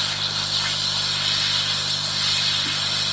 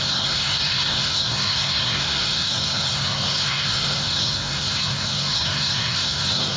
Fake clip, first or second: second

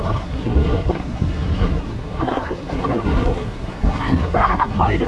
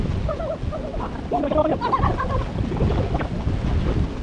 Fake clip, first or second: first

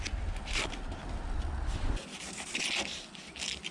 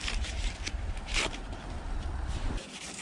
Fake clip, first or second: second